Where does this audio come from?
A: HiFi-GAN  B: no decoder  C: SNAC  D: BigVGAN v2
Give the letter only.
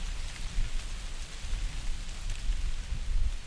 B